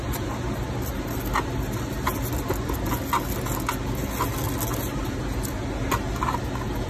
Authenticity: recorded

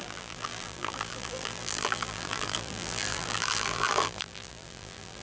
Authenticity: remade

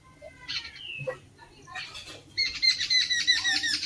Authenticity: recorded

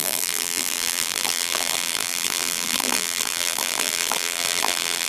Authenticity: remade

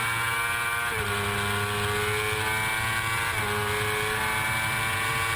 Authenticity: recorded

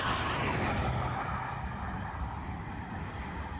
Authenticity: recorded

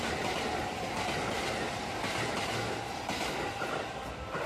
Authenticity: recorded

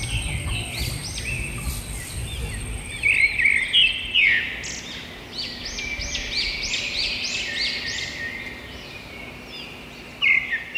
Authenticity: recorded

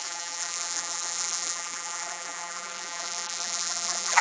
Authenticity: remade